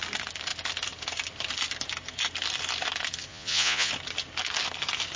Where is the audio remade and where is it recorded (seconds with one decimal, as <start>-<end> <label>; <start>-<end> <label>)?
0.0-3.3 recorded; 3.3-3.9 remade; 3.9-5.2 recorded